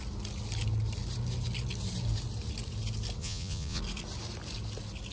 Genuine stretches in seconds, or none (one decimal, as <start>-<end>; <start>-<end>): 0.0-3.2; 3.8-5.1